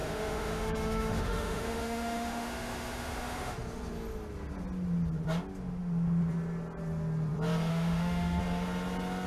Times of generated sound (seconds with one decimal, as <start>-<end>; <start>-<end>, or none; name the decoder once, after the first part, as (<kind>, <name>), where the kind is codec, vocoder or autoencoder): 0.0-3.5 (autoencoder, DAC-VAE); 7.7-8.4